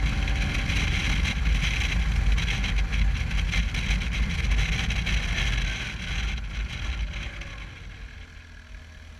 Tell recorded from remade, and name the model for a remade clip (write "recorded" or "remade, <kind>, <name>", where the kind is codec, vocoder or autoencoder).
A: recorded